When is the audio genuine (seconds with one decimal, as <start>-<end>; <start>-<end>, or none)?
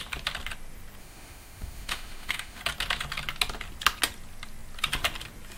0.0-1.0; 2.6-5.6